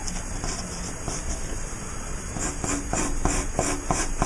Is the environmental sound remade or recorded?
recorded